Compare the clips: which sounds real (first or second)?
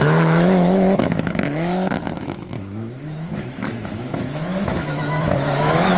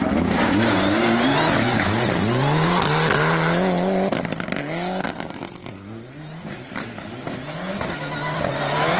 second